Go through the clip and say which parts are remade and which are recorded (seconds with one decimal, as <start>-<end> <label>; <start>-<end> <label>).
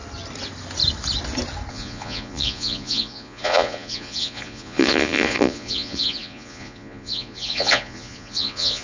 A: 0.0-1.7 recorded; 1.7-8.8 remade